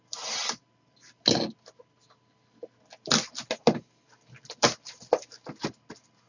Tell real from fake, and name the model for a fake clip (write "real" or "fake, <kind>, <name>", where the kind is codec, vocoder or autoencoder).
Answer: real